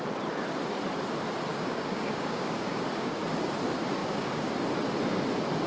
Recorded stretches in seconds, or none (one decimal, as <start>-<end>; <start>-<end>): 0.0-1.5; 3.2-4.0; 4.5-5.7